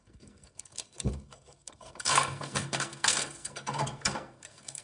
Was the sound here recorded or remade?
remade